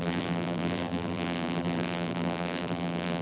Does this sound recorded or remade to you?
remade